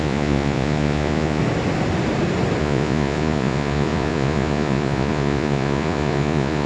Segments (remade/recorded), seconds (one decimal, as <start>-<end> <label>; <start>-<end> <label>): 0.0-1.4 remade; 1.4-2.6 recorded; 2.6-6.7 remade

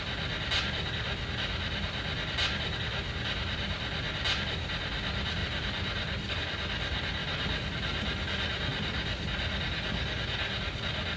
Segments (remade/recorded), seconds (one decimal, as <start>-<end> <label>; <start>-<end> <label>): 0.0-11.2 recorded

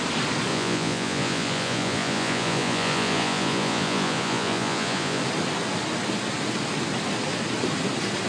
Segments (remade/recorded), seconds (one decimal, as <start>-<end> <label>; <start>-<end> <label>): 0.0-0.5 recorded; 0.5-5.2 remade; 5.2-8.3 recorded

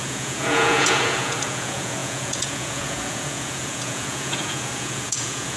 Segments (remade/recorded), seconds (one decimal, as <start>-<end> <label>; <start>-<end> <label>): 0.0-5.6 remade

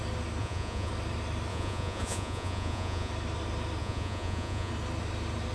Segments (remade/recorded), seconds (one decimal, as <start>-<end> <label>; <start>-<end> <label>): 0.0-0.4 recorded; 0.4-0.9 remade; 0.9-1.5 recorded; 1.5-3.1 remade; 3.1-3.8 recorded; 3.8-4.7 remade; 4.7-5.5 recorded

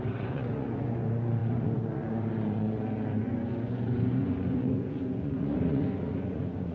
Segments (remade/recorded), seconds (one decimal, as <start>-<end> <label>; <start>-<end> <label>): 0.0-6.7 remade